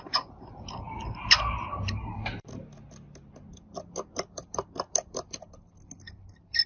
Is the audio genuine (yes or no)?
yes